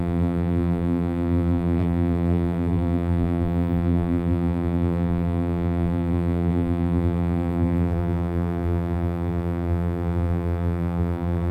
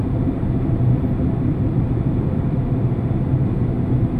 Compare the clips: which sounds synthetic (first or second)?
first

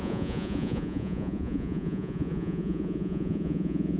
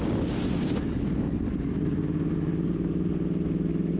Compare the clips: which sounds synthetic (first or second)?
first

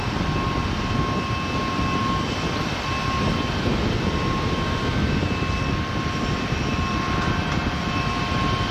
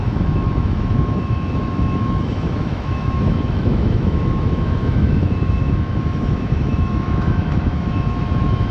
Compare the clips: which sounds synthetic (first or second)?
second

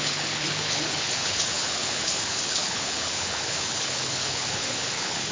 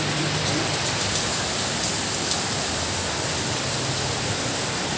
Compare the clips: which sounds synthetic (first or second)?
first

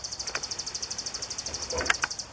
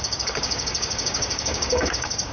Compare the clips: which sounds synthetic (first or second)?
second